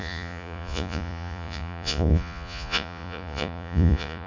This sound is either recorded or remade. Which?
remade